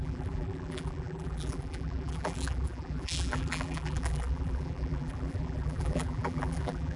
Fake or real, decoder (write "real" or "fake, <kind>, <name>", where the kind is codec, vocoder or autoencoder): fake, vocoder, BigVGAN v2